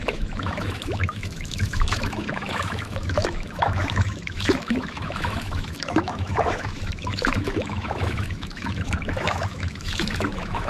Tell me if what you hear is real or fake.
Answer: fake